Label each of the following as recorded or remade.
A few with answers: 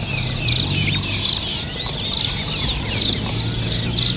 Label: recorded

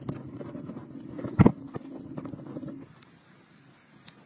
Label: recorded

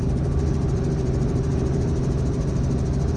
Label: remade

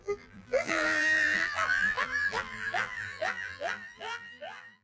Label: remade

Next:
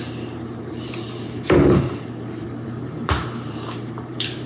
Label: remade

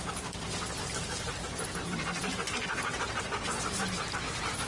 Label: remade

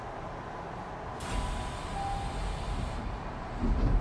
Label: recorded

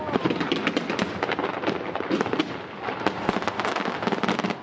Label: recorded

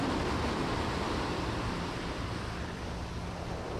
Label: recorded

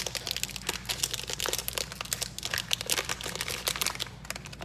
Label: recorded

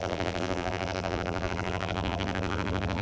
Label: remade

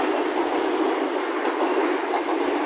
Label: recorded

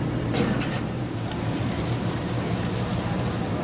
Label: remade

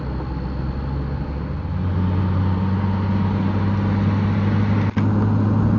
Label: recorded